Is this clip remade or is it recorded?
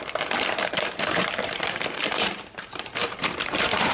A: remade